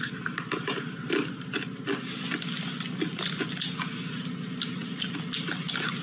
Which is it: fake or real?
real